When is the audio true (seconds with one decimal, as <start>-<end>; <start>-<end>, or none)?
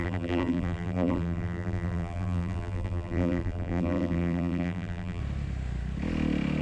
5.2-6.6